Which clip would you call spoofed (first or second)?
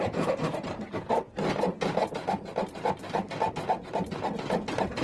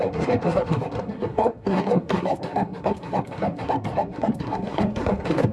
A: second